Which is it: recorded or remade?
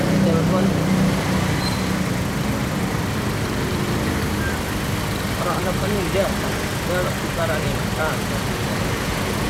recorded